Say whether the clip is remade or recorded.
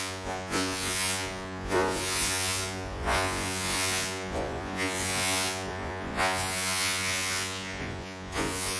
remade